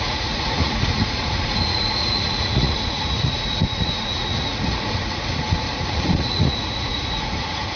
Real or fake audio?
fake